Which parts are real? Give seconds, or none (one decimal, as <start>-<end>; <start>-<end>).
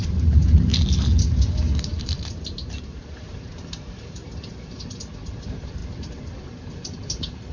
0.7-1.3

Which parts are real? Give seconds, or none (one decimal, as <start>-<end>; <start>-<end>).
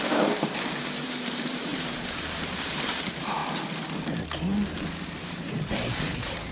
3.4-5.2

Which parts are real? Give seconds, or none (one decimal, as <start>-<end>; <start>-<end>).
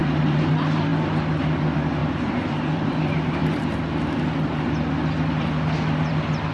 0.5-2.0; 3.8-6.5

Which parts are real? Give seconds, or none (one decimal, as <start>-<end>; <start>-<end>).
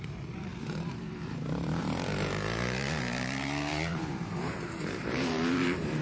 none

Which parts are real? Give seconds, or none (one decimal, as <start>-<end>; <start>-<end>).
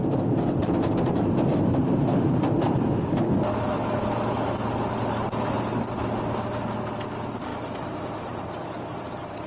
0.0-1.7; 4.0-7.5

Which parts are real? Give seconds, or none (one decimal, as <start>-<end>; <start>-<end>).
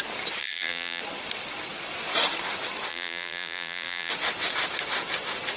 0.0-0.4; 1.0-2.9; 4.1-5.6